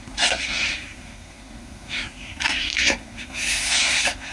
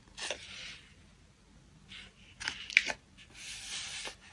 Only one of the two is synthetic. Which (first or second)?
first